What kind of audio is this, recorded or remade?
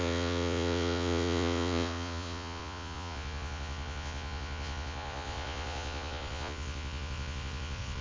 remade